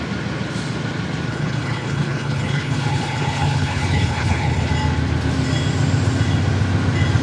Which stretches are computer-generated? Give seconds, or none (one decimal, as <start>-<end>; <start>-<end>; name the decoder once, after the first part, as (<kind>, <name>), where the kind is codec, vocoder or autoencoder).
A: 1.3-4.7 (codec, HILCodec)